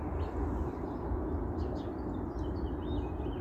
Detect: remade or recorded recorded